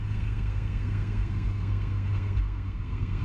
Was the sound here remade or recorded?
remade